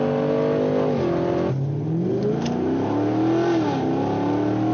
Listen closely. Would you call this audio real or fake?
real